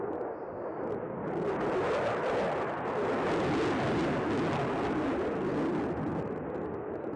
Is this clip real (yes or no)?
yes